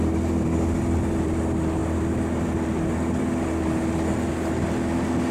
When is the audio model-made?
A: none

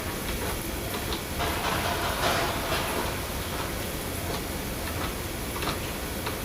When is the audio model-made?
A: none